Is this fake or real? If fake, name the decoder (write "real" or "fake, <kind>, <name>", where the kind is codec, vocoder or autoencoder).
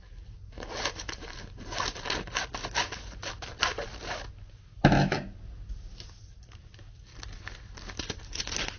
real